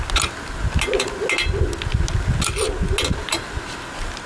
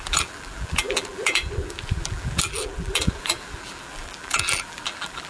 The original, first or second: first